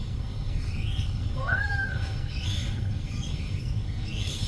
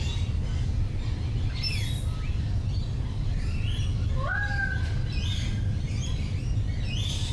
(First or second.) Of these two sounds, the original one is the second